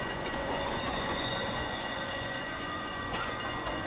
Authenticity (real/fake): fake